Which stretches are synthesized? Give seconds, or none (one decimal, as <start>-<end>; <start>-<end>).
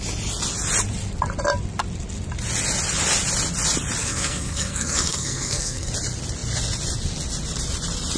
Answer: 4.0-5.9